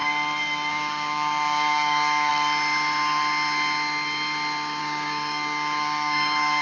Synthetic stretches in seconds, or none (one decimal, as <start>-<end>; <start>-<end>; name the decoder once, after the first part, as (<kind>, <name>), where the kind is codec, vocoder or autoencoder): 0.7-2.3 (codec, DAC); 4.8-6.6